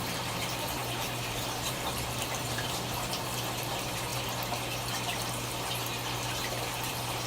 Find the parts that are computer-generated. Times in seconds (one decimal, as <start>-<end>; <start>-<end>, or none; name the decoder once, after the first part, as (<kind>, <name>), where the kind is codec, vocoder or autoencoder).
0.0-4.1 (vocoder, BigVGAN v2); 6.4-7.3

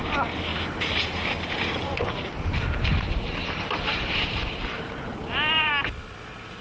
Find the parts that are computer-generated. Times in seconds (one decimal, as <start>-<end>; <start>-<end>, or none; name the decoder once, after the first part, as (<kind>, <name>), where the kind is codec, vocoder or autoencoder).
0.5-4.5 (vocoder, BigVGAN v2); 5.1-5.7